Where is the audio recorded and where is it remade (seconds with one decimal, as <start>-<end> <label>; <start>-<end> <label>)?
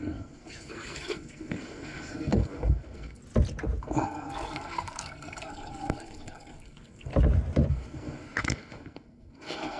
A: 0.0-3.2 remade; 3.2-3.8 recorded; 3.8-7.1 remade; 7.1-7.7 recorded; 7.7-9.8 remade